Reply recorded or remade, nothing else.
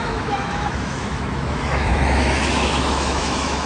remade